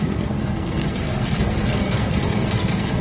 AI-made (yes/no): yes